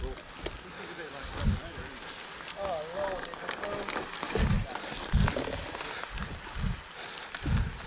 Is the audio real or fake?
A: real